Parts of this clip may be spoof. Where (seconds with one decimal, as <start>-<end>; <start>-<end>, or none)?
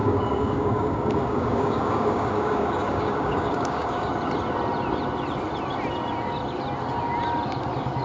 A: 0.0-4.1